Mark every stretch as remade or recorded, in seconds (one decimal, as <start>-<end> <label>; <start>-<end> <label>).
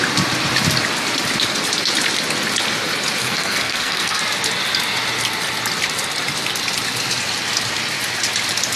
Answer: 0.0-3.2 recorded; 3.2-4.2 remade; 4.2-8.8 recorded